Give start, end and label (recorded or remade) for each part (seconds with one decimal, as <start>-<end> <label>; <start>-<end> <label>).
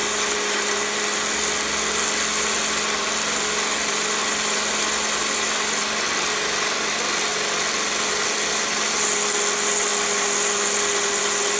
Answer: 0.0-11.6 recorded